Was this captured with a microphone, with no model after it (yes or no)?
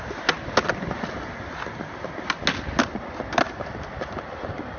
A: yes